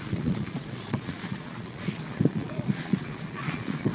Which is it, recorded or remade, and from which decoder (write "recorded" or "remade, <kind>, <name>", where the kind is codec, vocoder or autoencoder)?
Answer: remade, vocoder, Vocos